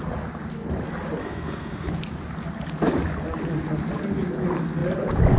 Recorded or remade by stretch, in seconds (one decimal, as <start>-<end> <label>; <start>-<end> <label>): 0.0-1.2 recorded; 1.2-1.9 remade; 1.9-5.4 recorded